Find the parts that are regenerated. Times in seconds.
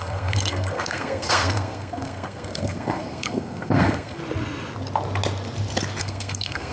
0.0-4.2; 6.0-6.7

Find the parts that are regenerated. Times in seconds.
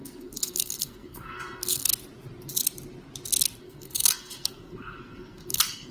0.0-1.9; 3.6-5.9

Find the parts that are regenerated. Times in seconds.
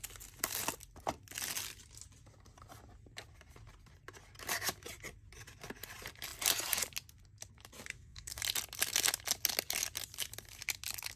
7.9-8.4